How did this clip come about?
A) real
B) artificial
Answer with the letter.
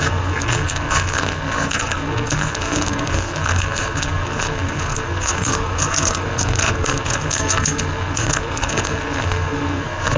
B